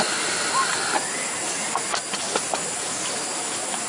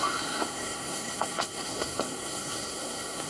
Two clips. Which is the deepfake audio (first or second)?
second